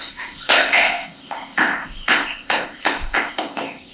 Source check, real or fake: fake